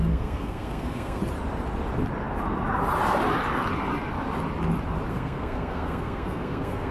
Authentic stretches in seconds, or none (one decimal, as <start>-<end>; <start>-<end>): 1.2-5.1